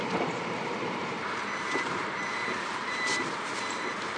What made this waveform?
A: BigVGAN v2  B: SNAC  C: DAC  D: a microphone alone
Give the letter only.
A